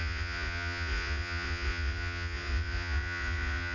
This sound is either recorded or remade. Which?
remade